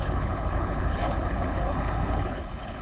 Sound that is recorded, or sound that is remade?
remade